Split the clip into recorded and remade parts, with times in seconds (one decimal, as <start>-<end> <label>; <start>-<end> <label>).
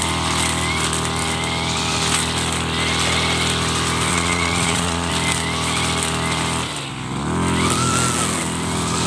0.0-4.1 recorded; 4.1-5.1 remade; 5.1-9.1 recorded